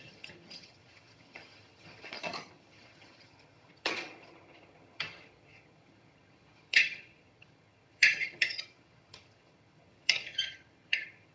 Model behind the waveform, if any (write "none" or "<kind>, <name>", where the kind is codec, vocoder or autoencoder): vocoder, HiFi-GAN